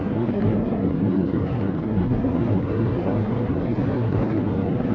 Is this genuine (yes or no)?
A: no